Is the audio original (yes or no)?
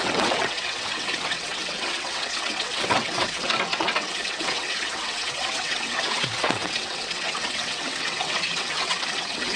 no